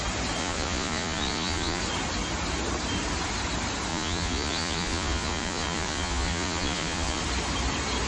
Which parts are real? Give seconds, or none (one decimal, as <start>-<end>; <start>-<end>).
0.0-0.4; 1.8-3.9; 7.2-8.1